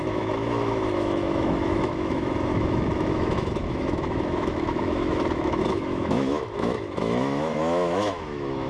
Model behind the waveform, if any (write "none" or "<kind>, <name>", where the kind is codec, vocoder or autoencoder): autoencoder, DAC-VAE